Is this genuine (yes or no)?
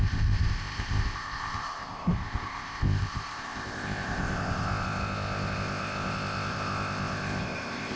no